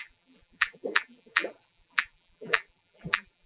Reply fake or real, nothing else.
fake